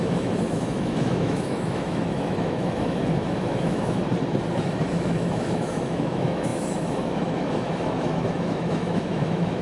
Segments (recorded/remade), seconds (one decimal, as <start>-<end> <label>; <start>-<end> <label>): 0.0-4.0 remade; 4.0-4.7 recorded; 4.7-9.6 remade